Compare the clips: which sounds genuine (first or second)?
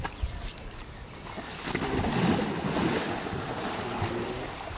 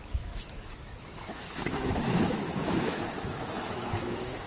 first